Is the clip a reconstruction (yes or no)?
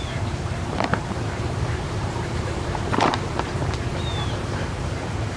yes